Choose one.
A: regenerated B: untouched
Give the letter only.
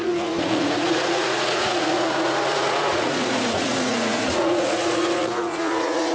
A